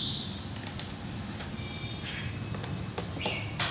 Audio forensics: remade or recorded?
recorded